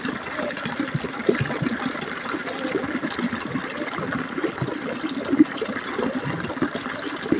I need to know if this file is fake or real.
real